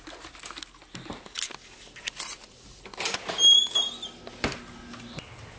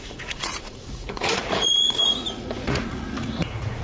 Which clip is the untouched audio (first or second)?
first